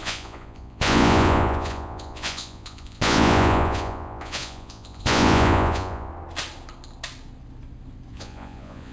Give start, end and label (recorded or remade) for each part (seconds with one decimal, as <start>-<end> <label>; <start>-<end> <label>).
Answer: 0.0-6.1 remade; 6.1-8.1 recorded; 8.1-8.9 remade

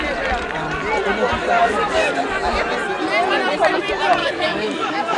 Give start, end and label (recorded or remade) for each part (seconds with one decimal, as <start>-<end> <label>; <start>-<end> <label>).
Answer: 0.0-1.6 recorded; 1.6-2.2 remade; 2.2-4.2 recorded; 4.2-5.2 remade

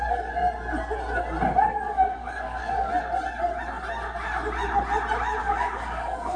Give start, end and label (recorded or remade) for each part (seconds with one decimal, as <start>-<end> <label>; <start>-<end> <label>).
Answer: 0.0-0.4 remade; 0.4-1.7 recorded; 1.7-2.9 remade; 2.9-5.4 recorded; 5.4-6.4 remade

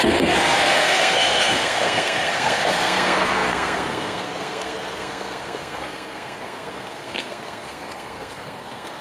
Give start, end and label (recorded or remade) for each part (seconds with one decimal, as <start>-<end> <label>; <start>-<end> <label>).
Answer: 0.0-9.0 remade

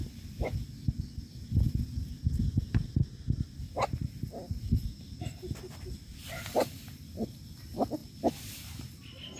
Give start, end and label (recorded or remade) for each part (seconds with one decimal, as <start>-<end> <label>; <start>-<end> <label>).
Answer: 0.0-9.4 recorded

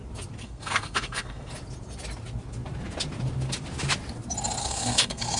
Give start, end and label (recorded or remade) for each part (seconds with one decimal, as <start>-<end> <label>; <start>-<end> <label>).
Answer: 0.0-0.4 recorded; 0.4-1.5 remade; 1.5-4.6 recorded; 4.6-5.4 remade

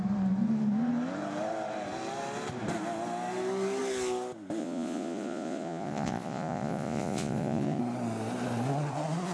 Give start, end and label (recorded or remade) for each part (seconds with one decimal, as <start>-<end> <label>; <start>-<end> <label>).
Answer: 0.0-4.6 recorded; 4.6-7.8 remade; 7.8-9.3 recorded